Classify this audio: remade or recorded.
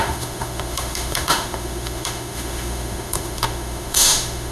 remade